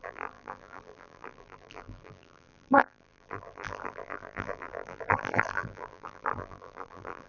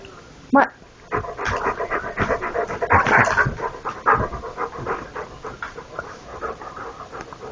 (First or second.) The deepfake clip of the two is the first